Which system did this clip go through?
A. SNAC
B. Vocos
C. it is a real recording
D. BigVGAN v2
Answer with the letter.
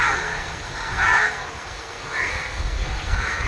A